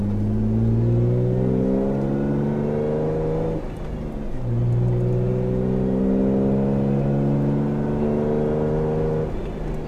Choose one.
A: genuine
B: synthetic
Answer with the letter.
A